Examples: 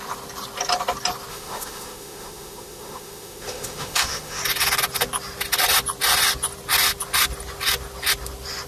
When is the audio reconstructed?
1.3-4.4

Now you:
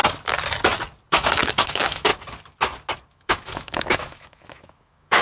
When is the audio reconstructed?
1.1-2.1; 3.1-5.2

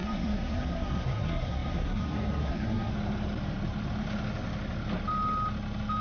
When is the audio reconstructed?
0.0-2.9

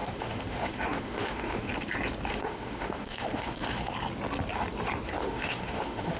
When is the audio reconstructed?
0.0-1.7; 2.3-3.9; 5.2-6.2